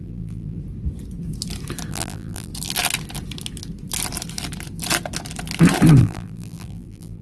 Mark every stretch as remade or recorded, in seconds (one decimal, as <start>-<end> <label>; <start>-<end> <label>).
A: 0.0-0.6 remade; 0.6-1.9 recorded; 1.9-2.5 remade; 2.5-6.0 recorded; 6.0-7.2 remade

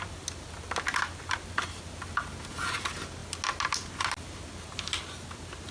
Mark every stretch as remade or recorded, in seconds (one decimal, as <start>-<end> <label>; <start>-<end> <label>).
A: 0.0-5.7 recorded

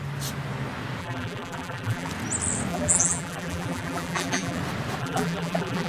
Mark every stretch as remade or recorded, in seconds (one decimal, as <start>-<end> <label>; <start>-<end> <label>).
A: 0.0-1.0 recorded; 1.0-2.1 remade; 2.1-2.7 recorded; 2.7-4.6 remade; 4.6-5.0 recorded; 5.0-5.9 remade

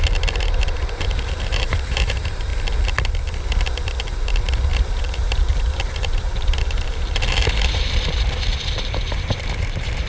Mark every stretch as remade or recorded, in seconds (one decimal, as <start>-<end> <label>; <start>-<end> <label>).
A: 0.0-2.5 remade; 2.5-5.0 recorded; 5.0-10.1 remade

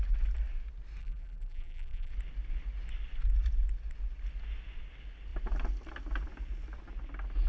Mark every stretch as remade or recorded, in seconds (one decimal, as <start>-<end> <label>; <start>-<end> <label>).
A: 0.0-1.0 recorded; 1.0-2.1 remade; 2.1-7.5 recorded

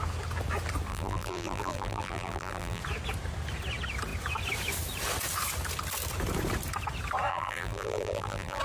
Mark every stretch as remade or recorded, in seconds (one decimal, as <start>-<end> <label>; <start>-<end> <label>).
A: 0.0-0.9 recorded; 0.9-2.8 remade; 2.8-7.3 recorded; 7.3-8.6 remade

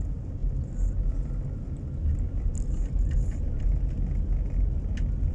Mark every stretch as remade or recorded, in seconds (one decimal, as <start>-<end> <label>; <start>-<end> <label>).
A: 0.0-5.3 recorded